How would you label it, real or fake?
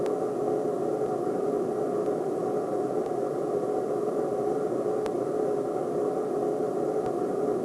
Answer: real